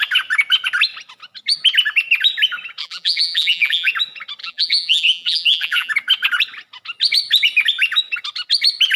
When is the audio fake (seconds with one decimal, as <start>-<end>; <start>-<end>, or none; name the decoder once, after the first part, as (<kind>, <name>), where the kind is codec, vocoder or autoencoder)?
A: 2.8-3.9 (vocoder, BigVGAN v2); 4.4-5.9